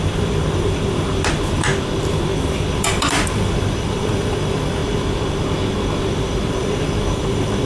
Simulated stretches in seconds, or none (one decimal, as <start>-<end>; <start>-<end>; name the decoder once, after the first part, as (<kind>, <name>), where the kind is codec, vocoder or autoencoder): 0.0-1.7 (vocoder, BigVGAN v2); 2.7-4.8; 6.5-7.7